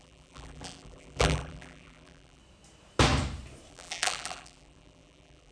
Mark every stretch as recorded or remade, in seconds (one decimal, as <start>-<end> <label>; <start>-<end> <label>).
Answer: 0.0-2.4 remade; 2.4-3.7 recorded; 3.7-5.5 remade